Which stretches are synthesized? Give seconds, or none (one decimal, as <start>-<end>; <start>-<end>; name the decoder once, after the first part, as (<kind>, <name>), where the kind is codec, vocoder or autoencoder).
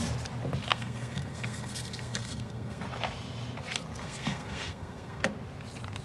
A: 0.7-2.8 (codec, SNAC); 4.0-5.2